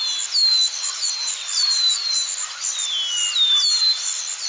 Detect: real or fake real